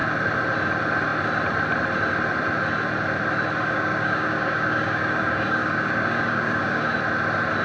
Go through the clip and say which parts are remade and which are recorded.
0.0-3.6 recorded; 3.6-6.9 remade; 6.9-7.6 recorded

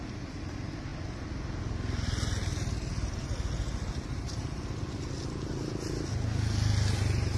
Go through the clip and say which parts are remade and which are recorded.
0.0-7.4 recorded

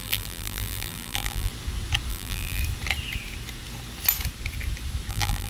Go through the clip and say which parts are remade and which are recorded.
0.0-1.5 remade; 1.5-2.1 recorded; 2.1-2.6 remade; 2.6-5.1 recorded; 5.1-5.5 remade

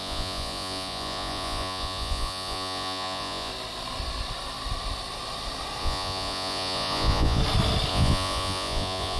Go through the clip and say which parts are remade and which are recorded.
0.0-3.5 remade; 3.5-5.8 recorded; 5.8-7.4 remade; 7.4-7.9 recorded; 7.9-9.2 remade